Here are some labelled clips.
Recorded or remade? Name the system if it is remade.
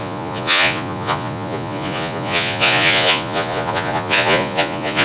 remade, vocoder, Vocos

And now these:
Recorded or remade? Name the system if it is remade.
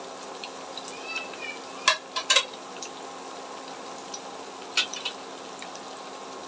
recorded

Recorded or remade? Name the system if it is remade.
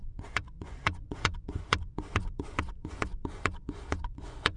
remade, vocoder, Vocos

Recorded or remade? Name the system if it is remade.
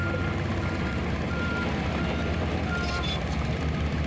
recorded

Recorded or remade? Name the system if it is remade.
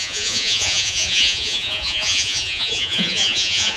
remade, vocoder, Vocos